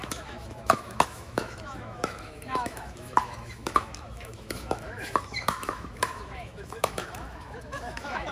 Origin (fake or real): fake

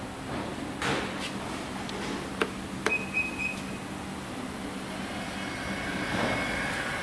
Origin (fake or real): real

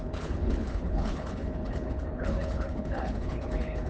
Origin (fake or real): fake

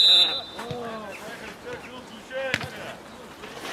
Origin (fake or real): real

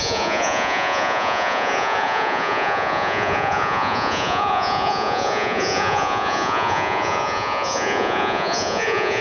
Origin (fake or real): fake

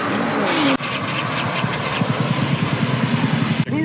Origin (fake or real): real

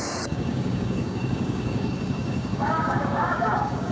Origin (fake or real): fake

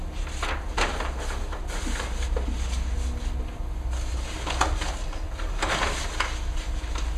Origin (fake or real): real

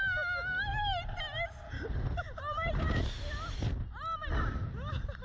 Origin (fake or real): real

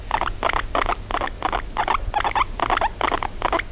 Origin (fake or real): real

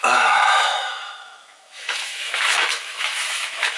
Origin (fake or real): fake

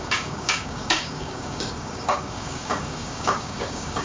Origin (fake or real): fake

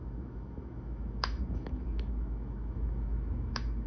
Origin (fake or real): fake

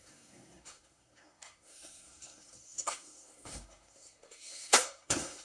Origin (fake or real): fake